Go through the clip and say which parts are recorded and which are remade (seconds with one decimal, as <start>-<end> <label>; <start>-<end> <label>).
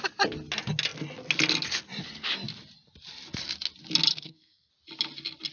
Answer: 0.0-4.1 recorded; 4.1-4.7 remade; 4.7-5.5 recorded